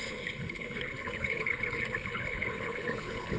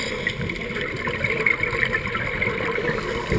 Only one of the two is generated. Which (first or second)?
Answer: first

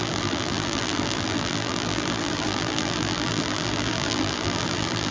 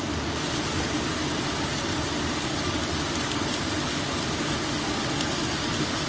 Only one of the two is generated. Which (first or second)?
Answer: first